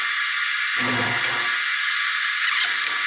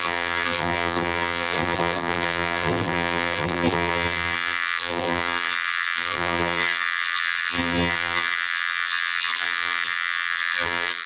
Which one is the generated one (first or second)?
second